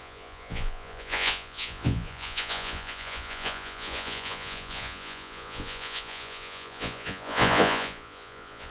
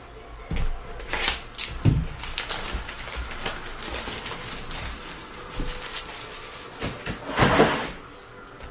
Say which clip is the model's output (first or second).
first